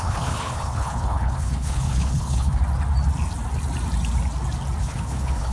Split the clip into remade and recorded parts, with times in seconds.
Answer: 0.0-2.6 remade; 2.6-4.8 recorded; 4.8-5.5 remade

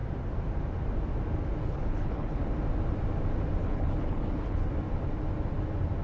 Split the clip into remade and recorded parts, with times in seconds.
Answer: 0.0-1.6 recorded; 1.6-2.4 remade; 2.4-3.6 recorded; 3.6-4.7 remade; 4.7-6.0 recorded

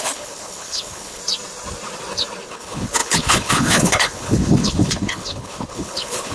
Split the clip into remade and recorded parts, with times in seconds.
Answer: 0.0-1.2 remade; 1.2-2.5 recorded; 2.5-6.3 remade